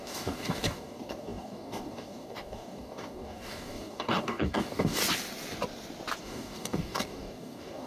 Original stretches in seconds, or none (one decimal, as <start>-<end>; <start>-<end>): 5.0-6.2